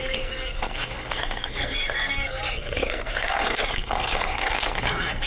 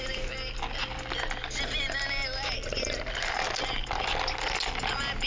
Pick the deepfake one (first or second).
first